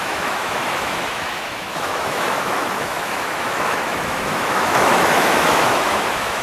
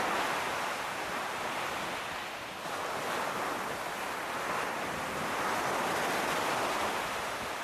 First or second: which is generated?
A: first